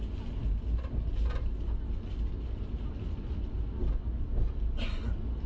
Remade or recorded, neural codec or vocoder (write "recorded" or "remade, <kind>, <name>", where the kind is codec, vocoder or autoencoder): recorded